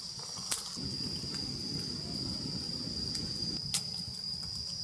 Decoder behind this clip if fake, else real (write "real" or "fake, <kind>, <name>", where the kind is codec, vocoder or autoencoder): real